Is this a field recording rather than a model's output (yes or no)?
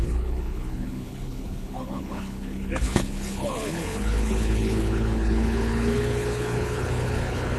no